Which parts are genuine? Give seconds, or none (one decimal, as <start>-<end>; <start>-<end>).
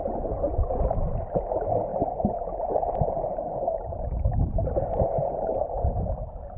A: 0.0-1.9; 5.9-6.6